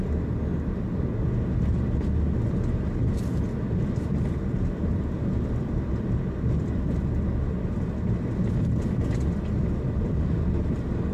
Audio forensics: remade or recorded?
recorded